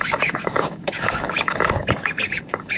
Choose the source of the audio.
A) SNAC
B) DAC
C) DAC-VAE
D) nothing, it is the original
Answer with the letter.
B